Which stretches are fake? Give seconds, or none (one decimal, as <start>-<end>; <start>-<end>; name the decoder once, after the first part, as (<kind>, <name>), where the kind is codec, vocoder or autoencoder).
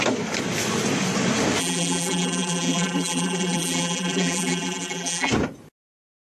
1.6-5.3 (vocoder, BigVGAN v2)